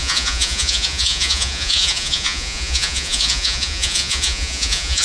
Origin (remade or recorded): remade